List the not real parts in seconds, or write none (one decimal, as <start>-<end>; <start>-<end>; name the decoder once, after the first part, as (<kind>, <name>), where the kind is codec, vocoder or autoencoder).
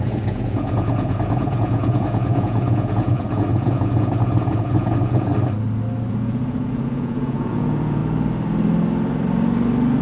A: 0.0-5.3 (vocoder, Vocos); 6.1-8.0